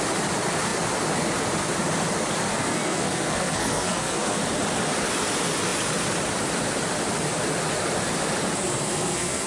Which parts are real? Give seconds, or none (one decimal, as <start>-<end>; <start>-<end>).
0.0-2.5; 4.4-8.8